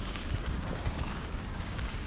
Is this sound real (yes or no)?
no